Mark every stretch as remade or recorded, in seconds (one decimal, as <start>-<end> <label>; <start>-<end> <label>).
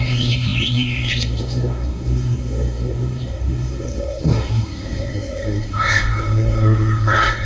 0.0-7.5 remade